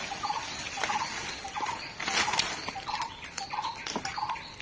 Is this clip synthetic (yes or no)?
no